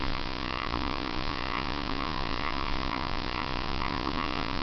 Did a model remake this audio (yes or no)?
yes